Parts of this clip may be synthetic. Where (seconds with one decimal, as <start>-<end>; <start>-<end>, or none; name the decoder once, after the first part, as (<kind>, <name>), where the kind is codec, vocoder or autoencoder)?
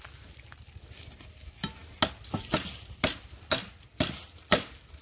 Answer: none